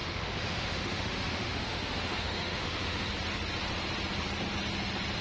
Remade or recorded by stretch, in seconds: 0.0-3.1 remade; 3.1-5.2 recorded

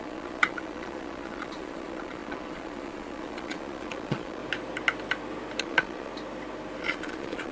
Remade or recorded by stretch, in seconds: 0.0-4.4 remade; 4.4-5.6 recorded; 5.6-6.1 remade; 6.1-6.8 recorded; 6.8-7.5 remade

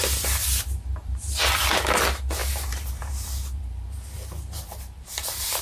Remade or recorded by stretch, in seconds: 0.0-0.4 recorded; 0.4-1.4 remade; 1.4-2.4 recorded; 2.4-5.6 remade

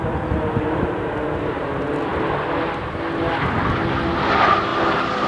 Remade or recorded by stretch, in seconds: 0.0-4.7 recorded; 4.7-5.3 remade

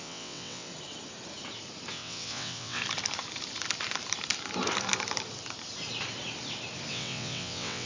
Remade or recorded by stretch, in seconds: 0.0-0.7 remade; 0.7-1.9 recorded; 1.9-2.8 remade; 2.8-6.9 recorded; 6.9-7.9 remade